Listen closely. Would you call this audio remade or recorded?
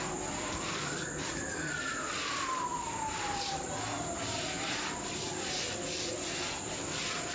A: remade